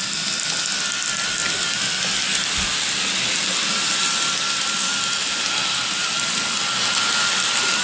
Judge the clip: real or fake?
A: real